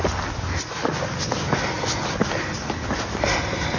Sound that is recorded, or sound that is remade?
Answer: recorded